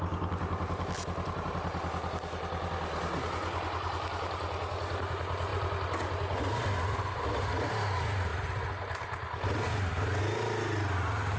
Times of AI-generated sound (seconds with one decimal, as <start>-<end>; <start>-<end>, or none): none